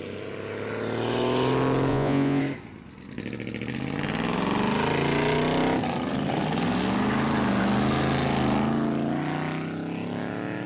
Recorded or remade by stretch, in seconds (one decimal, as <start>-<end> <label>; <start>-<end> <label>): 0.0-1.9 recorded; 1.9-2.4 remade; 2.4-10.7 recorded